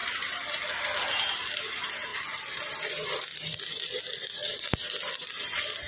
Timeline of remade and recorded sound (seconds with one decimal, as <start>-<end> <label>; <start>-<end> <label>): 0.0-5.9 recorded